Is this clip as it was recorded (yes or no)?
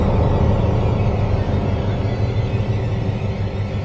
yes